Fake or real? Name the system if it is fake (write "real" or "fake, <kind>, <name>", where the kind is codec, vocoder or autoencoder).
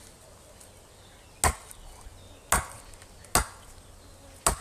real